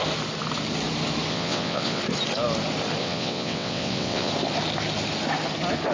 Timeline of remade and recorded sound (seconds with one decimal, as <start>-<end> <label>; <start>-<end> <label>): 0.0-1.3 recorded; 1.3-2.0 remade; 2.0-3.0 recorded; 3.0-4.3 remade; 4.3-5.9 recorded